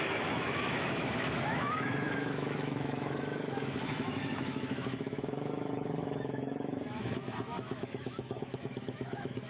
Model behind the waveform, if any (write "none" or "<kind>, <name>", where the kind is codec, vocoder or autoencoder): autoencoder, DAC-VAE